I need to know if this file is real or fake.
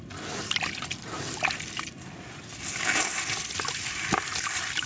real